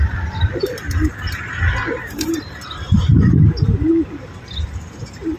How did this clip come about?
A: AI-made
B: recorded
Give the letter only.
A